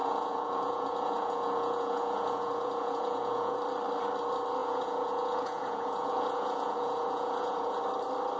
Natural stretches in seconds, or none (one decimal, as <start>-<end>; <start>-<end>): 3.6-4.6; 7.8-8.4